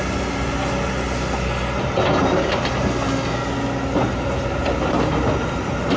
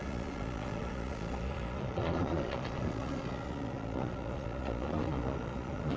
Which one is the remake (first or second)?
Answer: second